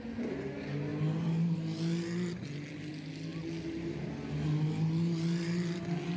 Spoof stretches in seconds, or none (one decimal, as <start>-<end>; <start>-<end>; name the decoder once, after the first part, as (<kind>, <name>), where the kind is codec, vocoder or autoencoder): none